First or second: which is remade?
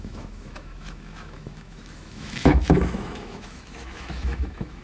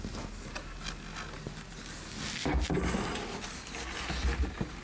first